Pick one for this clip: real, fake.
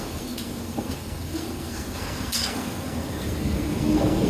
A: fake